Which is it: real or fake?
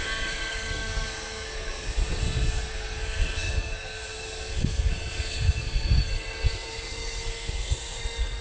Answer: fake